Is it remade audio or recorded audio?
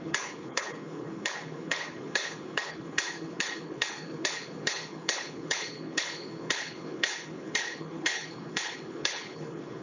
remade